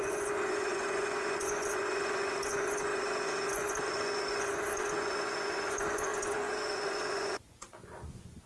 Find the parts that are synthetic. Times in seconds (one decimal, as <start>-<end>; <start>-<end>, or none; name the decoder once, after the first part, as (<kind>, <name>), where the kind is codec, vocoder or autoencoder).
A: 0.0-8.5 (vocoder, Vocos)